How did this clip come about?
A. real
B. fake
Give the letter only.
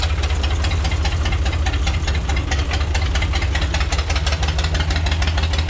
A